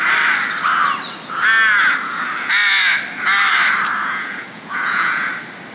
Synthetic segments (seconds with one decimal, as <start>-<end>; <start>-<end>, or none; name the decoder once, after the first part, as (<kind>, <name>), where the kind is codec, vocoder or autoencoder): 4.0-5.3 (vocoder, Vocos)